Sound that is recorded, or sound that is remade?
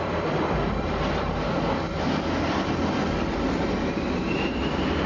remade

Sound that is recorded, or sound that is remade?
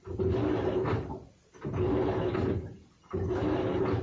recorded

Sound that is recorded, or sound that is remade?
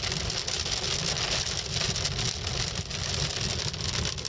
recorded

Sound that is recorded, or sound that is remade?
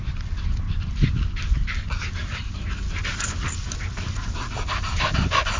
recorded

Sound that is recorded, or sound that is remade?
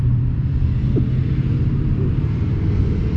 remade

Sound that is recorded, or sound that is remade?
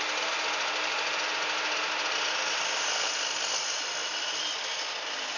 recorded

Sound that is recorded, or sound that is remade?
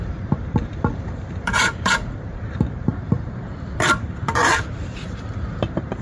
remade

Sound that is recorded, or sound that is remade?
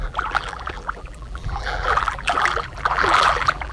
remade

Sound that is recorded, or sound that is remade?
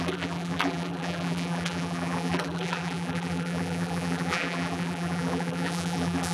remade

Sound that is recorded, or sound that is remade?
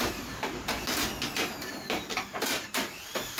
remade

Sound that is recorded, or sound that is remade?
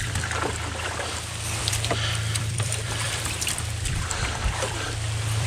remade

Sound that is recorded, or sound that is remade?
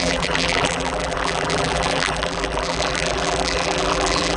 remade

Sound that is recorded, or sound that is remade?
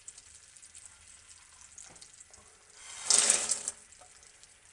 recorded